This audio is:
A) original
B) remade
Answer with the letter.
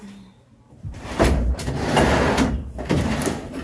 B